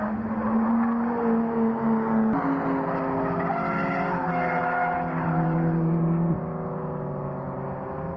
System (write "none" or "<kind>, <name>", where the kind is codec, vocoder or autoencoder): none